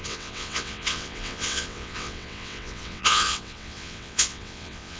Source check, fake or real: fake